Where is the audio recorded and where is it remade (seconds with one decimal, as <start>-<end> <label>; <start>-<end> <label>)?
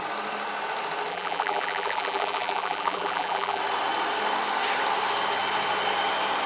0.0-1.1 recorded; 1.1-3.6 remade; 3.6-6.5 recorded